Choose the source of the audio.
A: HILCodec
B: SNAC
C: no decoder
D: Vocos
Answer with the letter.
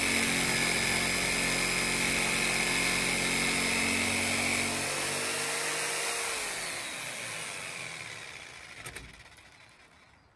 C